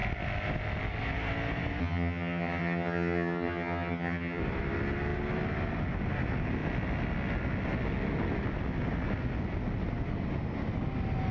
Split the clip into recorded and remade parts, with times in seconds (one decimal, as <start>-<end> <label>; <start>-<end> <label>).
0.0-1.8 recorded; 1.8-4.4 remade; 4.4-11.3 recorded

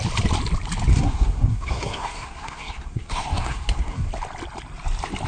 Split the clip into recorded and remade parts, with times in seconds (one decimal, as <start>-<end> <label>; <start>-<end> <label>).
0.0-0.9 recorded; 0.9-4.1 remade; 4.1-5.3 recorded

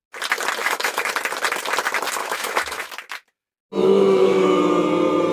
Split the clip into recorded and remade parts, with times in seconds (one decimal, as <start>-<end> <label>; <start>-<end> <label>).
0.0-0.6 recorded; 0.6-1.1 remade; 1.1-2.2 recorded; 2.2-2.9 remade; 2.9-3.8 recorded; 3.8-4.6 remade; 4.6-5.3 recorded

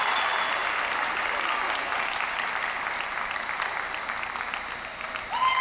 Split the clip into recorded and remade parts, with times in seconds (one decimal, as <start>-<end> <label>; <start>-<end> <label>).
0.0-5.6 recorded